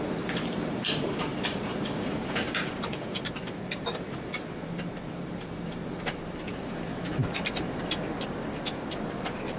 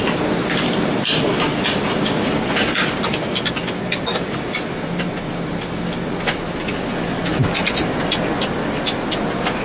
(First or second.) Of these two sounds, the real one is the second